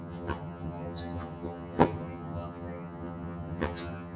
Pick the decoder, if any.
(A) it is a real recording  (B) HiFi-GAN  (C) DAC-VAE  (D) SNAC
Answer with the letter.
B